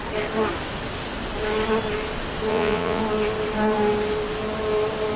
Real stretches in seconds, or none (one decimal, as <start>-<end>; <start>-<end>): 0.0-2.5; 3.0-5.2

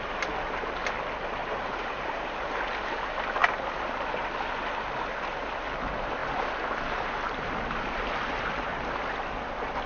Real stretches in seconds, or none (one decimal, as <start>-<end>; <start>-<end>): 0.0-1.4; 2.6-9.9

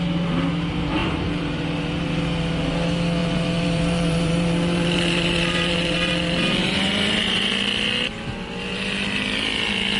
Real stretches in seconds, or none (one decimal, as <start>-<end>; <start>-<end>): 0.0-1.0; 2.2-3.2; 6.1-6.6; 7.5-10.0

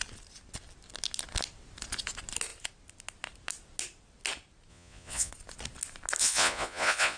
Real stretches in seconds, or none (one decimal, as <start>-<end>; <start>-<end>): 0.0-4.7; 5.3-6.2

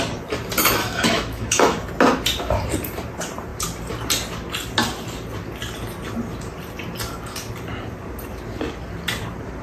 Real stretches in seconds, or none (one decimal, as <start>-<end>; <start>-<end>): 0.0-0.8; 1.9-9.6

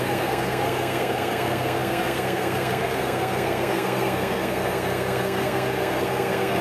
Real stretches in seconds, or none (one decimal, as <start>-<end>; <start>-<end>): none

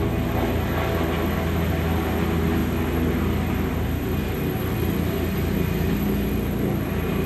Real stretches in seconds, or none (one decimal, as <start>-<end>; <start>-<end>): 0.0-7.3

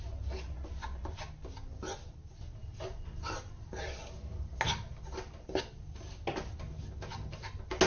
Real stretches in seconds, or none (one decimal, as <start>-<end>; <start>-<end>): 0.0-7.9